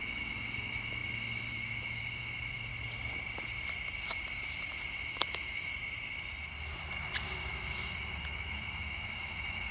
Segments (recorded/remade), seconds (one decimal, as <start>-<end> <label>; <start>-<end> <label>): 0.0-2.7 remade; 2.7-4.9 recorded; 4.9-5.7 remade; 5.7-7.4 recorded; 7.4-9.7 remade